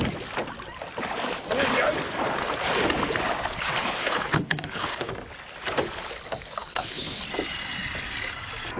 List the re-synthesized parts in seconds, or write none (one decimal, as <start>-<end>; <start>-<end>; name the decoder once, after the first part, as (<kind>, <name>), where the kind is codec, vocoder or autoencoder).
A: 4.0-5.1 (codec, HILCodec); 6.6-7.2